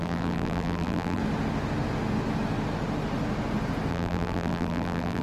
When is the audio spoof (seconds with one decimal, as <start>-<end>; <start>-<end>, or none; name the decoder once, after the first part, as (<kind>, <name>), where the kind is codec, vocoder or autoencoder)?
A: 0.0-1.2 (vocoder, BigVGAN v2); 3.9-5.2